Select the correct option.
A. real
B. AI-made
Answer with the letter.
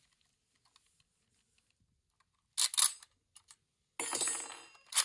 A